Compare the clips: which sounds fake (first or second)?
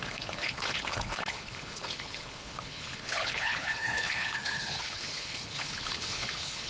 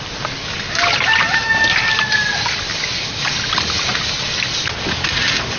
first